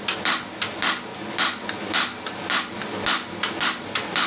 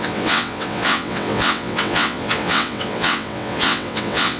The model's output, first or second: second